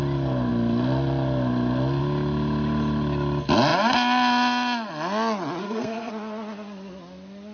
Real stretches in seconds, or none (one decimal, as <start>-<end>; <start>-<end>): 0.0-5.6; 6.1-7.5